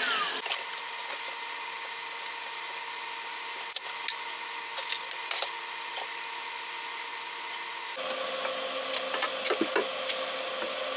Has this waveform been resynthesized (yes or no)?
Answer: no